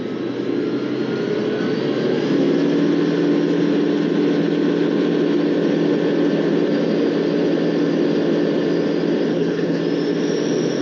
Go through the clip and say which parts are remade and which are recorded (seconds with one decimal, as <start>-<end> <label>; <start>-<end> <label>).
0.0-9.3 recorded; 9.3-9.8 remade; 9.8-10.8 recorded